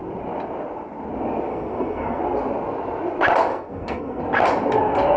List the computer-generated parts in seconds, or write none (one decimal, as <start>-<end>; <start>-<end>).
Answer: 1.5-2.2; 3.5-4.2